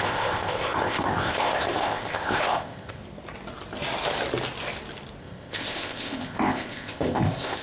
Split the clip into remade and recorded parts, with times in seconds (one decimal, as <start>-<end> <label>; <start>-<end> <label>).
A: 0.0-3.0 remade; 3.0-5.2 recorded; 5.2-7.6 remade